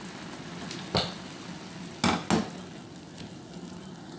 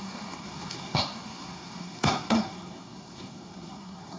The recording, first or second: first